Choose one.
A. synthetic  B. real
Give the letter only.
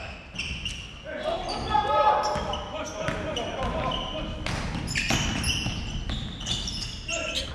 B